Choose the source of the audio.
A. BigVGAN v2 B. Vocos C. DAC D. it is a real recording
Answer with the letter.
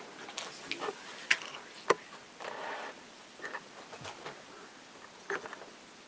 D